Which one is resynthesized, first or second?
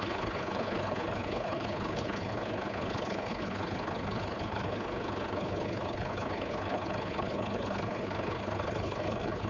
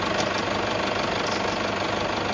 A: first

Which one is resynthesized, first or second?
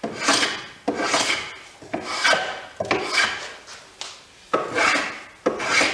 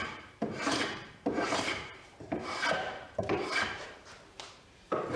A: second